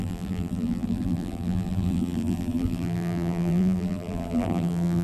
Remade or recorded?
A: remade